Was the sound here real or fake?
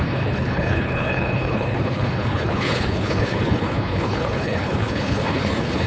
fake